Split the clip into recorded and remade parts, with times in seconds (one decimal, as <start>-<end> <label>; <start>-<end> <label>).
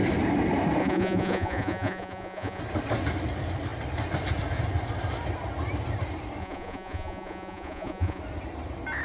0.0-0.8 recorded; 0.8-2.6 remade; 2.6-6.4 recorded; 6.4-8.2 remade; 8.2-9.0 recorded